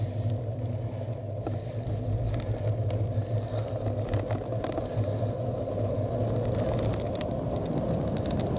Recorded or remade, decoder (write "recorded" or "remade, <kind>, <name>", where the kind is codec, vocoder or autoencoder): recorded